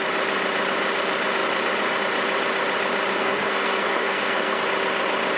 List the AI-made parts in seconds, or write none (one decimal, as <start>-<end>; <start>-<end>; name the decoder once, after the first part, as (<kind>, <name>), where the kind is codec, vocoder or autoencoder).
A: 3.1-4.6 (codec, SNAC)